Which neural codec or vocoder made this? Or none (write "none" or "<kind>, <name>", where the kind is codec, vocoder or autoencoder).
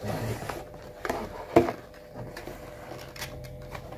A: none